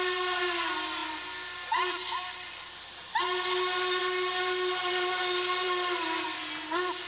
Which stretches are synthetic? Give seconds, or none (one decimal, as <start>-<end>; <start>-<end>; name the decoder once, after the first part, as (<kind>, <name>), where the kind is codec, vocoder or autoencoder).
4.8-6.4 (vocoder, BigVGAN v2)